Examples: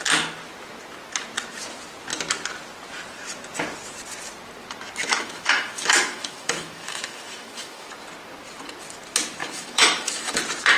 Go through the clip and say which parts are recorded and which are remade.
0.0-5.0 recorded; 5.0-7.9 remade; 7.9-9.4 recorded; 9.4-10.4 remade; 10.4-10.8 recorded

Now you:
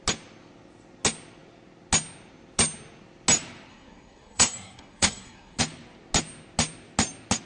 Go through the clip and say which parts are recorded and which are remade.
0.0-3.7 recorded; 3.7-5.6 remade; 5.6-7.5 recorded